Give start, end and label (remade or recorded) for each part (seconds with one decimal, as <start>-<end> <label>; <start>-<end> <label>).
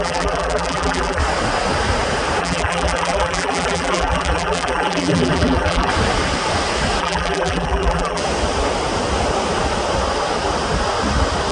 0.0-1.2 remade; 1.2-2.4 recorded; 2.4-5.9 remade; 5.9-7.0 recorded; 7.0-8.2 remade; 8.2-11.5 recorded